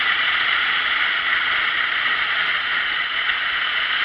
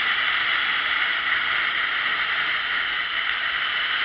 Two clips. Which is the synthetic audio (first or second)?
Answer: first